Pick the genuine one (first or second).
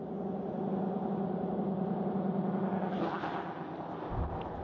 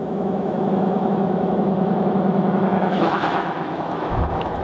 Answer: first